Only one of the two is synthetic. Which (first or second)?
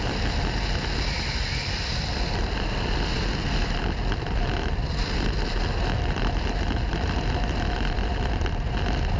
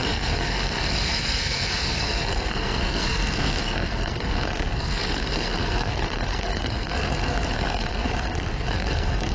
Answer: second